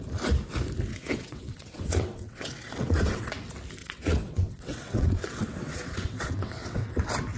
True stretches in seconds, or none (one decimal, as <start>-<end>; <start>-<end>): 0.0-0.9; 3.3-3.8; 7.0-7.4